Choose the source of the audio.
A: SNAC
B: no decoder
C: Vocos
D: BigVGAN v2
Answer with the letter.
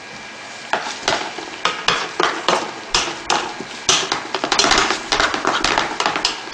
B